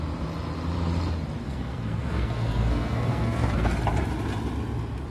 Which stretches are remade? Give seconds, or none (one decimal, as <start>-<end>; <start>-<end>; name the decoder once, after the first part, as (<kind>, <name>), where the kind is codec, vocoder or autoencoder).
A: 1.4-3.7 (codec, SNAC)